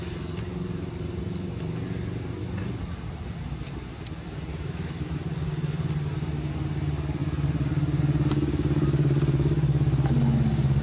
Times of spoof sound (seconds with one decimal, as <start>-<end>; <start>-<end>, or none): 4.5-5.1